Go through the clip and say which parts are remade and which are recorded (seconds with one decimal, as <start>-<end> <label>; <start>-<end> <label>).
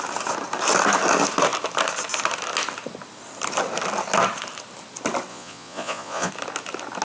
0.0-5.3 recorded; 5.3-6.3 remade; 6.3-7.0 recorded